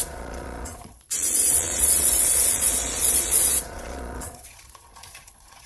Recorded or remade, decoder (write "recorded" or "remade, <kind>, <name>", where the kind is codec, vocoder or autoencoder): remade, vocoder, Vocos